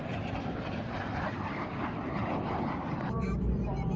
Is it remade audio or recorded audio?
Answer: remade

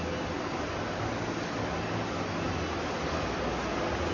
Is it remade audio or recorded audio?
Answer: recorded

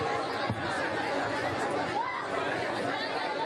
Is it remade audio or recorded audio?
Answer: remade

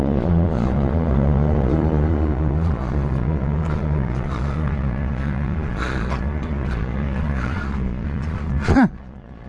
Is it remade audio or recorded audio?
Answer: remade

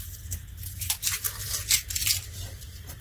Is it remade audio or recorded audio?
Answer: recorded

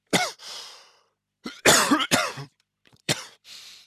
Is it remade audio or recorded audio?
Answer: remade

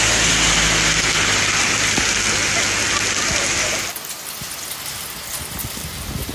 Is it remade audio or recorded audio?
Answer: recorded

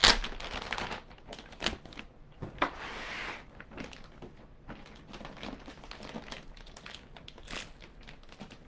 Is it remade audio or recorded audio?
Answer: recorded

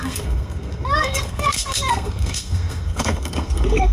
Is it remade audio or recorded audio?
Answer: remade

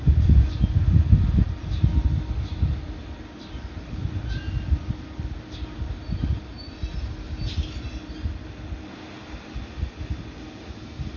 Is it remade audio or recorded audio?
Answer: recorded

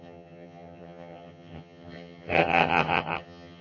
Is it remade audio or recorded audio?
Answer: remade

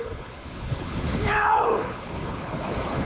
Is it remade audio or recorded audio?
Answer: remade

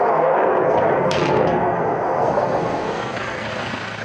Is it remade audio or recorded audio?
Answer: remade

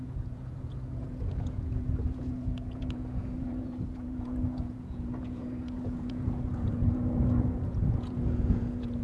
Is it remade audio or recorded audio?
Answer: remade